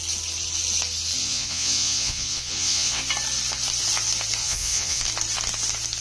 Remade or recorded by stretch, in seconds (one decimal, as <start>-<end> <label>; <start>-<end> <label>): 0.0-1.2 recorded; 1.2-3.0 remade; 3.0-4.4 recorded; 4.4-5.0 remade; 5.0-6.0 recorded